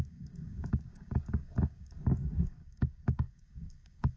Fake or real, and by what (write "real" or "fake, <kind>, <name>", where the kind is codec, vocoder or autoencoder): fake, codec, DAC